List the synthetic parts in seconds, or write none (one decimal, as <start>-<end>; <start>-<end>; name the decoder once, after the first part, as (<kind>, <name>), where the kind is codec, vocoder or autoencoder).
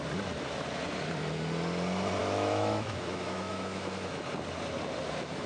2.2-4.3 (autoencoder, DAC-VAE)